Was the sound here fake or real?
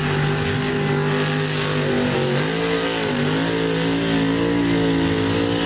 real